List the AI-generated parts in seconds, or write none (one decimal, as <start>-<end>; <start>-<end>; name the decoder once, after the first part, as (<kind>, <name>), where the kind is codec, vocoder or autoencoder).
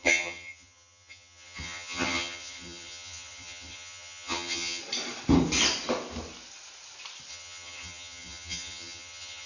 0.0-4.8 (vocoder, HiFi-GAN); 7.3-9.5